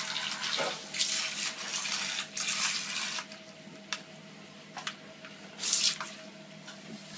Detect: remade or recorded recorded